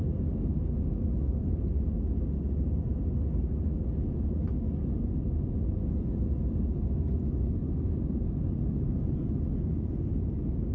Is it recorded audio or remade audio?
recorded